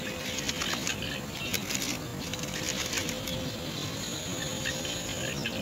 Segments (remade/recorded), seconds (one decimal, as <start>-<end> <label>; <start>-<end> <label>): 0.0-5.6 recorded